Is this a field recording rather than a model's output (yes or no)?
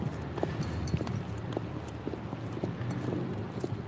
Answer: yes